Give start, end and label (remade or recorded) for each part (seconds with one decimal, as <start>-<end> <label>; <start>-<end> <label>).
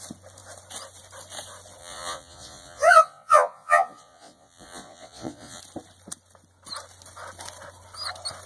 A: 0.0-1.8 recorded; 1.8-5.6 remade; 5.6-8.5 recorded